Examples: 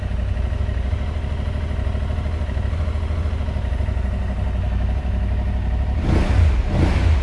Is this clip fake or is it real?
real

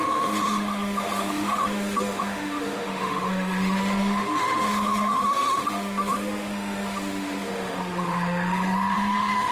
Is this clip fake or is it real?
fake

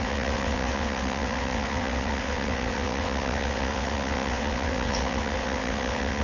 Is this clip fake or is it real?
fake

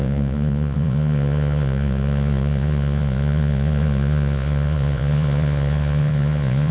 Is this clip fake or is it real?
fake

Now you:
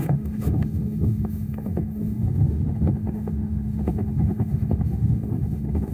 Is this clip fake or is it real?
fake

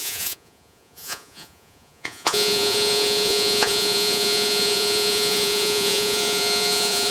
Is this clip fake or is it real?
fake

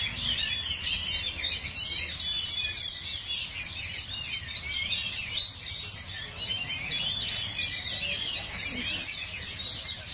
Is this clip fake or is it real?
real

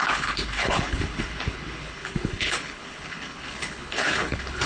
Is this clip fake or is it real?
fake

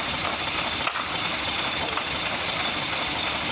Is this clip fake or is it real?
real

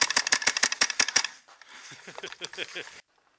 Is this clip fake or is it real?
fake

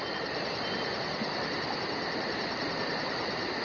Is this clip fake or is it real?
real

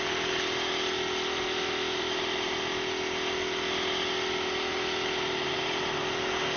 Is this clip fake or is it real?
real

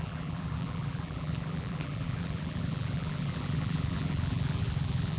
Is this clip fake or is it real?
fake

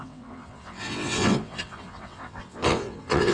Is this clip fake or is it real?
fake